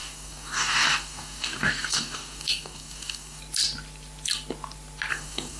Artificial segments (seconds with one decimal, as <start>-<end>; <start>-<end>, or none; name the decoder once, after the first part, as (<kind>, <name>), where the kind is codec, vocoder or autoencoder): 0.0-3.4 (codec, DAC); 5.1-5.6